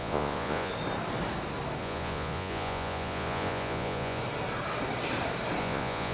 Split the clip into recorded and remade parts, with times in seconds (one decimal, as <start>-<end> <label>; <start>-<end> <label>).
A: 0.0-0.7 remade; 0.7-1.8 recorded; 1.8-4.2 remade; 4.2-5.6 recorded; 5.6-6.1 remade